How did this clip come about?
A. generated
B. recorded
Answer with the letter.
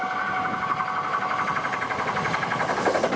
B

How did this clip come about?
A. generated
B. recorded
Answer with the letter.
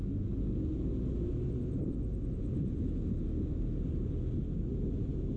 B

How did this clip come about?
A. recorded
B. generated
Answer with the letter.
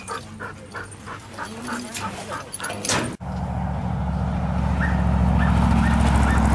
A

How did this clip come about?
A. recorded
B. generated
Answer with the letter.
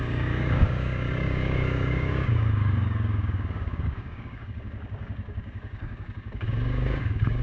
B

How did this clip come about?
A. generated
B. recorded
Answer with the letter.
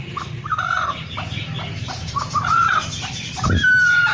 A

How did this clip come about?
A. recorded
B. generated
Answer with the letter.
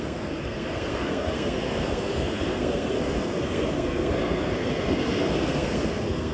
B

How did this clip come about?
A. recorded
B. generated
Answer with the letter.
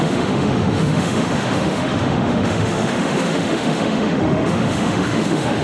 B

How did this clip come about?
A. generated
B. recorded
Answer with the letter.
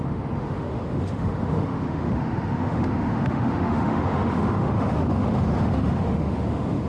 A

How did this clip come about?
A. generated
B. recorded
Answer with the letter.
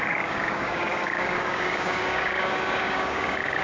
A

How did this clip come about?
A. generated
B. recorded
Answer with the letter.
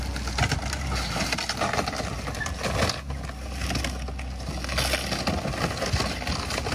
B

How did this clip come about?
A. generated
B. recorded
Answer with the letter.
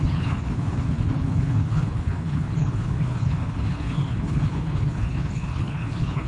A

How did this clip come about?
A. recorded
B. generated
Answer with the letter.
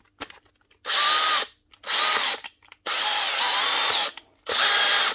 A